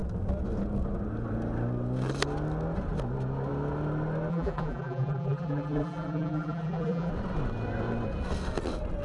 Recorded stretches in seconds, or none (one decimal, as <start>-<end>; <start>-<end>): 0.0-4.3; 7.1-9.0

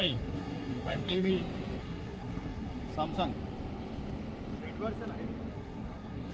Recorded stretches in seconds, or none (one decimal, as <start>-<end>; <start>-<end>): 1.3-1.8; 2.9-5.5

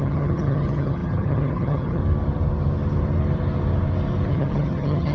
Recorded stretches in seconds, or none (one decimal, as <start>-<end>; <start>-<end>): 2.0-4.3

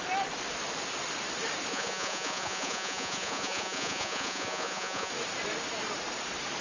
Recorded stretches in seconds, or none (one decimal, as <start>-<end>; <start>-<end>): 0.0-1.7; 5.1-6.6

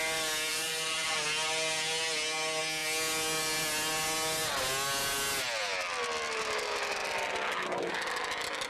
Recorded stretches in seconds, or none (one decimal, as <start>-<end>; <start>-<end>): 0.0-0.5; 1.2-8.7

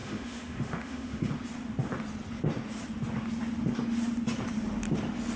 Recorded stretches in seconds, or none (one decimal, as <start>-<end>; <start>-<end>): 1.3-5.4